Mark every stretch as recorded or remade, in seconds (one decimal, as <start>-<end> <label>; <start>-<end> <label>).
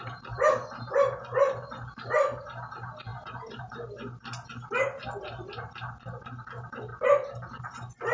0.0-8.1 recorded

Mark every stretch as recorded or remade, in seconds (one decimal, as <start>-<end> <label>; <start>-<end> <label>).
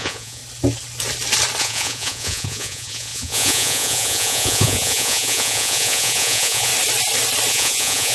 0.0-0.4 remade; 0.4-1.6 recorded; 1.6-6.7 remade; 6.7-7.5 recorded; 7.5-8.1 remade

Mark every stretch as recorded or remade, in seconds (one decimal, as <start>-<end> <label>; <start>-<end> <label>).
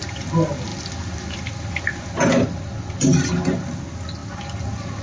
0.0-5.0 recorded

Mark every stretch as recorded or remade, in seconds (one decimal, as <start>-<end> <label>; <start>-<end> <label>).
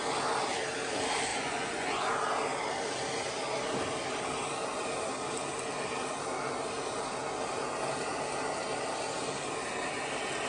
0.0-1.3 recorded; 1.3-2.1 remade; 2.1-10.5 recorded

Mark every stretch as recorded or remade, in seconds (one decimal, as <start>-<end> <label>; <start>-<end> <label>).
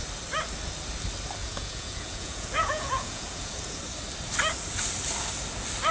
0.0-1.4 recorded; 1.4-3.8 remade; 3.8-5.9 recorded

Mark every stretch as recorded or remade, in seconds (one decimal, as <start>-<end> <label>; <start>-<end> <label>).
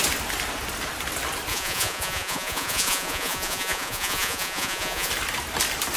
0.0-1.5 recorded; 1.5-5.1 remade; 5.1-6.0 recorded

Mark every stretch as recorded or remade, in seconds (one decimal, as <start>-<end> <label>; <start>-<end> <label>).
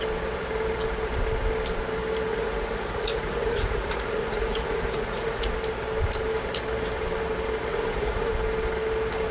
0.0-2.3 recorded; 2.3-5.5 remade; 5.5-7.7 recorded; 7.7-8.3 remade; 8.3-9.3 recorded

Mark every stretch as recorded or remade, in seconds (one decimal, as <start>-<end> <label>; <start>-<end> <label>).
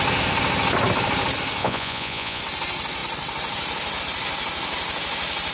0.0-1.6 recorded; 1.6-2.4 remade; 2.4-5.5 recorded